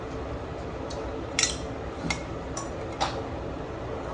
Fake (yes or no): no